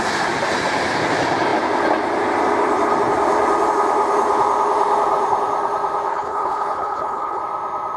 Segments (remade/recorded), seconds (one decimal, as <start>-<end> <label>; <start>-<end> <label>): 0.0-6.1 recorded; 6.1-7.4 remade; 7.4-8.0 recorded